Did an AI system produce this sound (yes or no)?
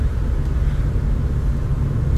no